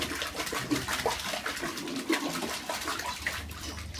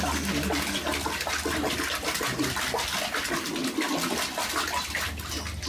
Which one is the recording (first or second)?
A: second